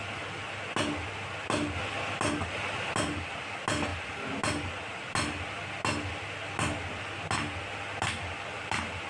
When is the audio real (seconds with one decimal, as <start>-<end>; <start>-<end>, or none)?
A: 0.0-9.1